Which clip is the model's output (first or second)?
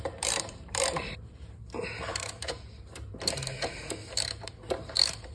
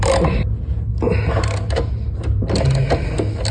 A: first